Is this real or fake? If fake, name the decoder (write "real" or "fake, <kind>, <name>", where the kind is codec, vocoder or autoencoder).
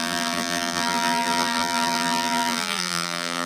fake, vocoder, BigVGAN v2